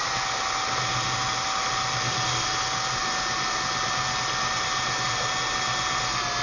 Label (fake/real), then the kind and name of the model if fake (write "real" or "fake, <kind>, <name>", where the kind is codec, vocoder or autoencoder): real